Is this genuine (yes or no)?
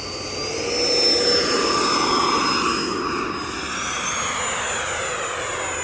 yes